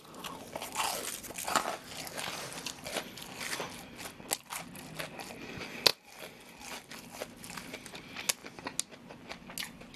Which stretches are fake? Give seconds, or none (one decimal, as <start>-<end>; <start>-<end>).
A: none